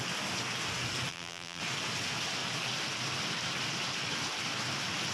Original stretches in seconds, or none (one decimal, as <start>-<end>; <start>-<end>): 0.0-1.1; 1.6-5.1